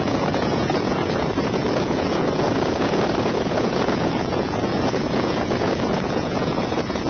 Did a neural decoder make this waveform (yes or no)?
yes